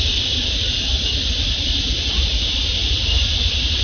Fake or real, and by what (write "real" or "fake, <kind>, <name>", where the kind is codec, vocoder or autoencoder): fake, vocoder, BigVGAN v2